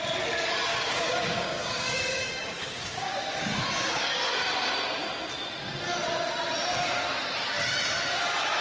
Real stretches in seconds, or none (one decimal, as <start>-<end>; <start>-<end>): 0.0-0.7; 3.4-8.6

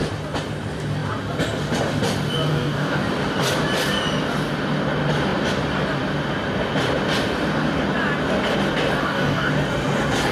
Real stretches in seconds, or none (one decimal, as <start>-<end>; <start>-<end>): 0.0-2.5; 3.0-9.0; 9.5-10.3